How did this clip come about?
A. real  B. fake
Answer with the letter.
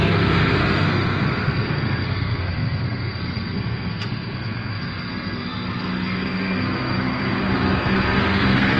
B